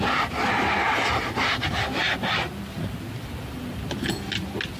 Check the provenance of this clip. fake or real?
real